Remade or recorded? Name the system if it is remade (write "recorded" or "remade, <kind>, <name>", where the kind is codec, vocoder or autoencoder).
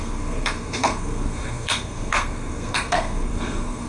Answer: remade, codec, SNAC